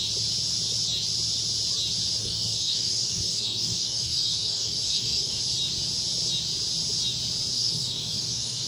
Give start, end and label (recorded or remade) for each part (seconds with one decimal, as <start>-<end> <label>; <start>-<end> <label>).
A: 0.0-2.2 recorded; 2.2-5.4 remade; 5.4-7.5 recorded; 7.5-8.7 remade